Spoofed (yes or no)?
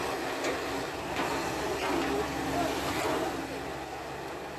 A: no